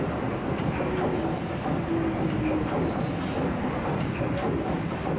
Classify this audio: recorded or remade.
recorded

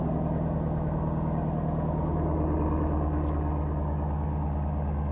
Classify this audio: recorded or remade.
recorded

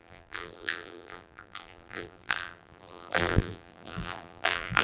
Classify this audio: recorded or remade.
remade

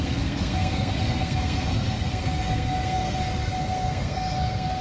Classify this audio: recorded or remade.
remade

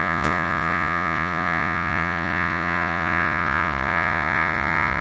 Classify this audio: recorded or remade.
remade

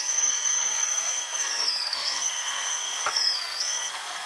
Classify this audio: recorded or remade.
remade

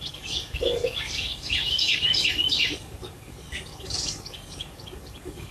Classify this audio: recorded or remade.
remade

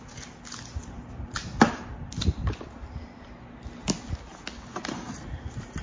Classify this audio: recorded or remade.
recorded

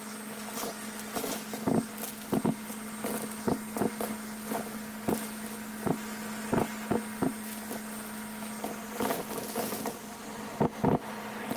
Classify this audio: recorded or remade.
recorded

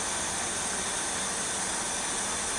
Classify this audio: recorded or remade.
recorded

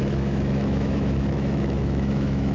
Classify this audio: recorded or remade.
remade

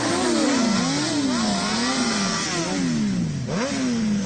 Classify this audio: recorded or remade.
recorded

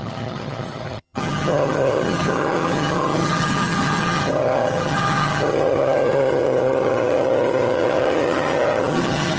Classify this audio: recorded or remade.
remade